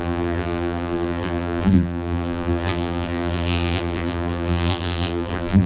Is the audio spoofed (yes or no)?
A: yes